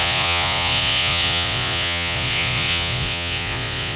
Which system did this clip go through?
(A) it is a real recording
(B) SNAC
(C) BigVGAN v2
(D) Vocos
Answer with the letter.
D